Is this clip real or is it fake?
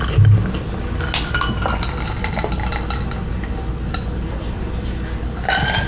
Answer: real